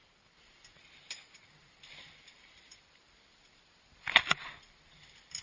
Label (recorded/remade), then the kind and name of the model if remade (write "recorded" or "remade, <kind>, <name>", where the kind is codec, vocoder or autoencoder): recorded